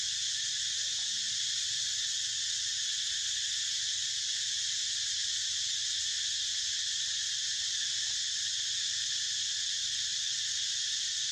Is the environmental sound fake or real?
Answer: real